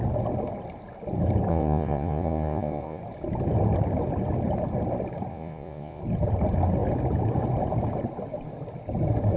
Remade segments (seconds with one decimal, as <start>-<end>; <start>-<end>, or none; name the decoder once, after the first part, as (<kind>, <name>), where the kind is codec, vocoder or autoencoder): 1.5-3.0 (vocoder, Vocos); 5.3-6.0